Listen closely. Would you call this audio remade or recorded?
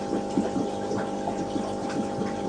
recorded